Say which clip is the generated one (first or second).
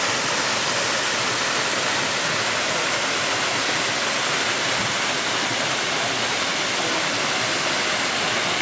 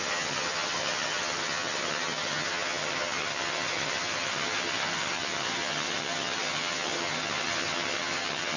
second